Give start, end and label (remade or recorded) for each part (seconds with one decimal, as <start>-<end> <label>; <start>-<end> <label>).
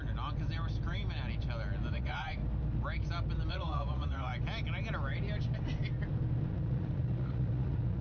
0.0-1.9 recorded; 1.9-2.4 remade; 2.4-3.5 recorded; 3.5-4.3 remade; 4.3-6.5 recorded; 6.5-8.0 remade